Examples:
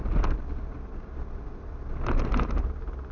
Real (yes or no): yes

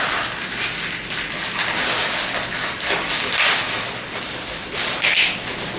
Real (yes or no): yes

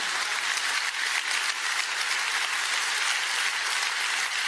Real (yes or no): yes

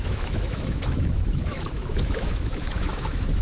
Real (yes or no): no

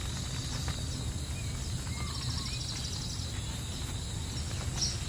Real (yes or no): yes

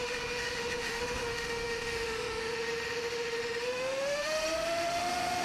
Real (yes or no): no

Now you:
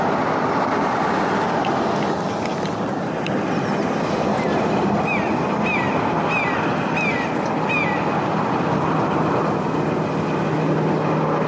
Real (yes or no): yes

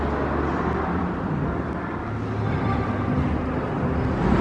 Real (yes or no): yes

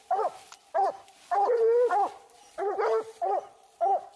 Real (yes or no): yes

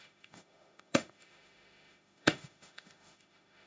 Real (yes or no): no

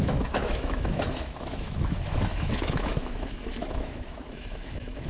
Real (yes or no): no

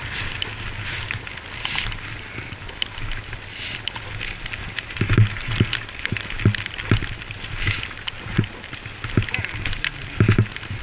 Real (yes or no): yes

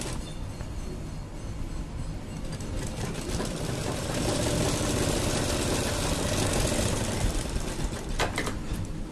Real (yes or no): yes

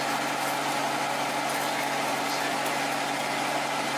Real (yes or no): yes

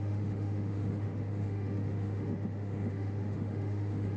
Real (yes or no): no